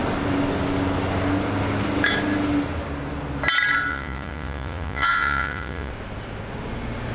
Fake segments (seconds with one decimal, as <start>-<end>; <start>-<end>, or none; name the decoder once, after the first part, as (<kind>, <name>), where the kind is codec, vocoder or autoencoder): 3.9-5.9 (vocoder, Vocos)